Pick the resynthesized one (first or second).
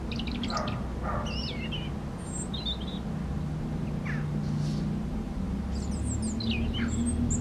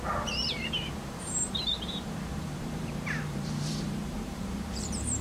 second